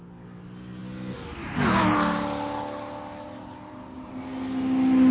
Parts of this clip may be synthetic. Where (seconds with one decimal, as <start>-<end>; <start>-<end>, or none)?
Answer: none